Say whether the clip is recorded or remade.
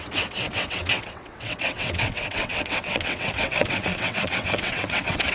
remade